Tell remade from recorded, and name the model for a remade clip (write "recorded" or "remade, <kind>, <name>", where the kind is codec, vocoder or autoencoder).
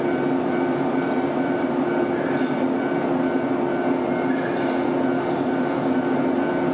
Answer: recorded